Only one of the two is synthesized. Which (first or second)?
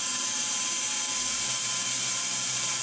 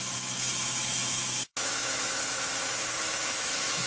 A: second